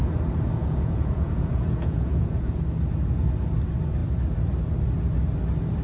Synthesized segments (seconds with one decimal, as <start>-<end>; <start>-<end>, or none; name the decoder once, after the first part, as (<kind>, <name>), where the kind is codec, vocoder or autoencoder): 0.6-2.6 (vocoder, Vocos)

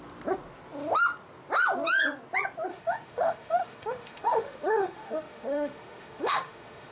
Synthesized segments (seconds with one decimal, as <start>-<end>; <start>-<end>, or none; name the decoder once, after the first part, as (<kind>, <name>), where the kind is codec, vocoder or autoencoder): 2.7-6.9 (autoencoder, DAC-VAE)

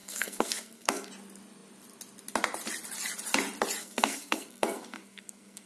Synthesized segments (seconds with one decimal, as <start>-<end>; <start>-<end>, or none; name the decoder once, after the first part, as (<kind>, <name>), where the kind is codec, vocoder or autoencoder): 0.0-1.1 (codec, SNAC); 3.8-5.7

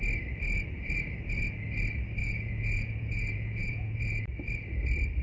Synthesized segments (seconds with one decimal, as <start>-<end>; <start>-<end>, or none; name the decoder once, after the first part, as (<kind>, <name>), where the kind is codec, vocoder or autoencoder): 2.2-4.2 (vocoder, Vocos)

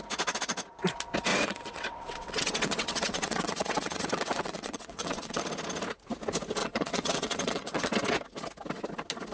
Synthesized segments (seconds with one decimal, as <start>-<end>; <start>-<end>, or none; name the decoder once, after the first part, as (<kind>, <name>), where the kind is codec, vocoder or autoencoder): 1.3-5.4 (vocoder, WaveNeXt); 6.6-7.9